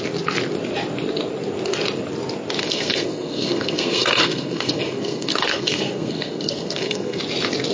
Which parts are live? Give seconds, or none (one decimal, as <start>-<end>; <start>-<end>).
0.0-2.6; 7.2-7.7